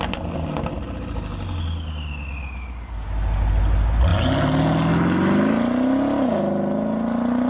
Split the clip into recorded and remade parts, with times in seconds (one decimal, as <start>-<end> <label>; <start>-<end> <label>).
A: 0.0-7.5 recorded